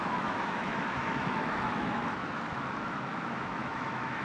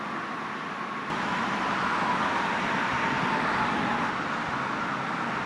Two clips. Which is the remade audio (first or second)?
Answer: first